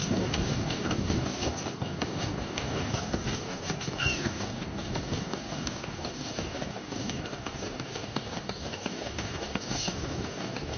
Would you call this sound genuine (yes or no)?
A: no